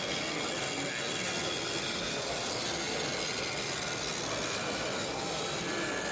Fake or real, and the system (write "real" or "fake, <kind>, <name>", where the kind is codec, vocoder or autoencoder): real